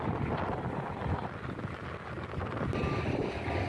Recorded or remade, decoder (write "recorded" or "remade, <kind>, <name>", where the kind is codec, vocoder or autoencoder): recorded